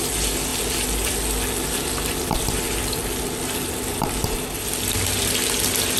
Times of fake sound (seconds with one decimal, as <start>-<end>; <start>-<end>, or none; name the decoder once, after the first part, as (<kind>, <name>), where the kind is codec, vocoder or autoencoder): none